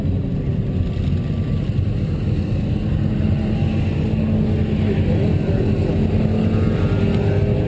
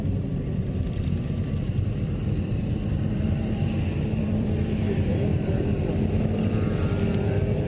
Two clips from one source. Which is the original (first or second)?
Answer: first